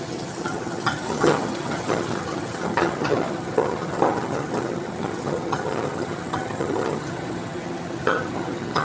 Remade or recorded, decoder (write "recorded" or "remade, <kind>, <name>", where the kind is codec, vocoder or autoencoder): remade, vocoder, HiFi-GAN